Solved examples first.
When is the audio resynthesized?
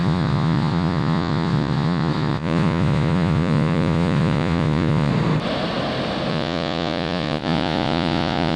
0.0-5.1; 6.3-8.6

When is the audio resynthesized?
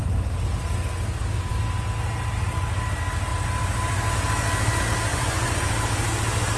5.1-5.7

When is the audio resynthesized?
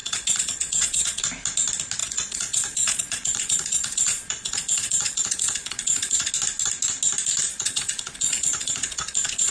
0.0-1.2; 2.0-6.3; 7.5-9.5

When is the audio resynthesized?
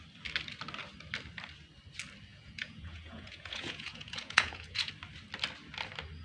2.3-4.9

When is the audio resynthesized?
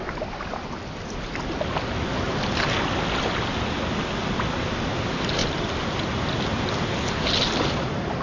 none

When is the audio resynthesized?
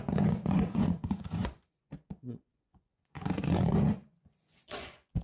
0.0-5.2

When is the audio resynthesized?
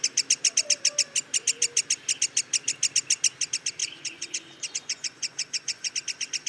3.8-5.9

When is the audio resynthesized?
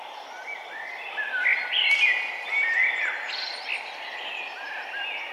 none